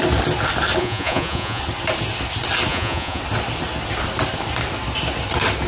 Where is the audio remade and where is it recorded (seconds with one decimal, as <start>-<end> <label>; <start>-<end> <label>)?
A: 0.0-0.8 recorded; 0.8-1.6 remade; 1.6-2.7 recorded; 2.7-3.2 remade; 3.2-5.7 recorded